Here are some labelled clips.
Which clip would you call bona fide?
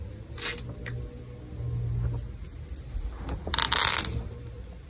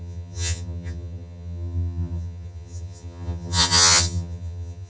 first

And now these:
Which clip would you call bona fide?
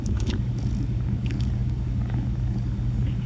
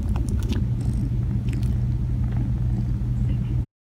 second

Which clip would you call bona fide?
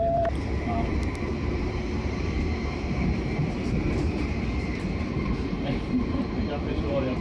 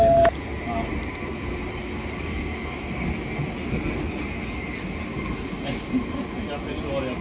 second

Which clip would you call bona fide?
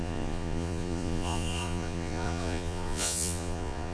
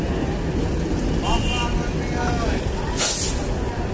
second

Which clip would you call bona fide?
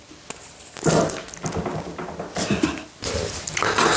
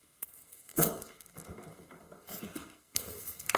first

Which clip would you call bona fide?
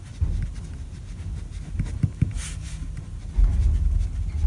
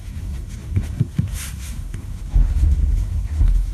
first